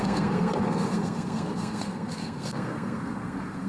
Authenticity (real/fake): fake